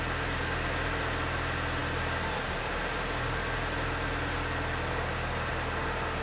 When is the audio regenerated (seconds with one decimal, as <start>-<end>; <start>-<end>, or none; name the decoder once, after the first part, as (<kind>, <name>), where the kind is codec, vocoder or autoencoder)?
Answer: none